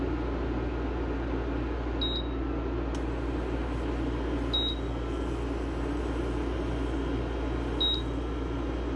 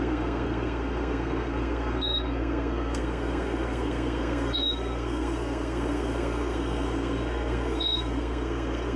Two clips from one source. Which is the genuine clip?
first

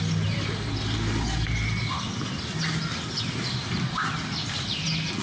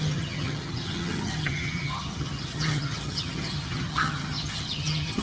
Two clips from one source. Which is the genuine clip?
first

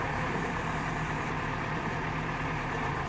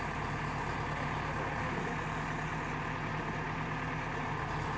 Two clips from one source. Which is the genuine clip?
second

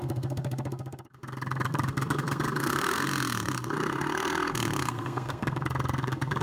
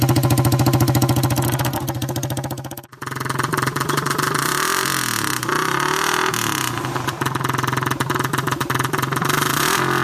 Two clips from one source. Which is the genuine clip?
second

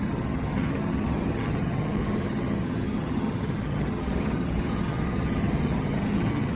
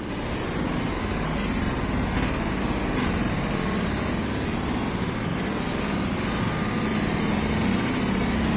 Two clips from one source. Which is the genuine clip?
second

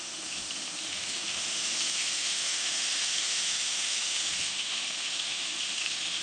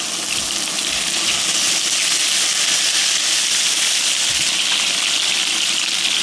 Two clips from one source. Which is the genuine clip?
second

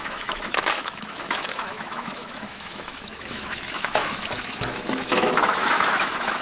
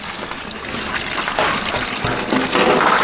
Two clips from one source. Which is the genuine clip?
second